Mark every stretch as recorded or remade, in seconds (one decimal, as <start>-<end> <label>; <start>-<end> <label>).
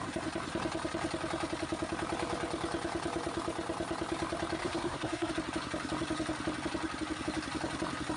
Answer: 0.0-4.6 recorded; 4.6-5.3 remade; 5.3-8.2 recorded